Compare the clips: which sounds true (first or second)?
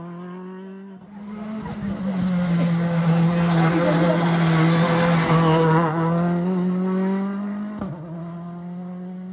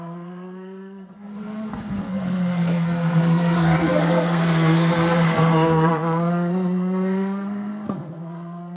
first